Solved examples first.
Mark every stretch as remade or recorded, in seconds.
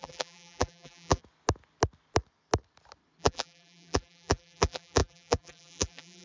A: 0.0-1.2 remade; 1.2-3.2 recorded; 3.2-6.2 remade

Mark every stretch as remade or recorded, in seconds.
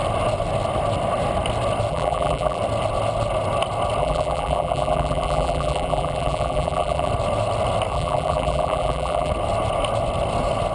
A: 0.0-1.9 recorded; 1.9-2.6 remade; 2.6-4.0 recorded; 4.0-7.1 remade; 7.1-7.9 recorded; 7.9-9.3 remade; 9.3-10.7 recorded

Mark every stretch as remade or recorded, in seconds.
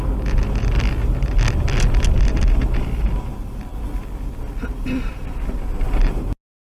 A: 0.0-6.7 recorded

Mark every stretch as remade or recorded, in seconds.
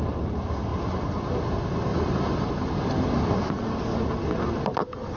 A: 0.0-1.9 recorded; 1.9-3.5 remade; 3.5-5.2 recorded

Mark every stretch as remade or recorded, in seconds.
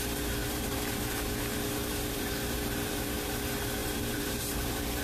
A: 0.0-0.4 recorded; 0.4-3.4 remade; 3.4-3.8 recorded; 3.8-5.0 remade